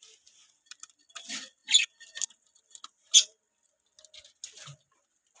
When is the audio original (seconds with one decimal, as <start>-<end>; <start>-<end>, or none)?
0.0-5.4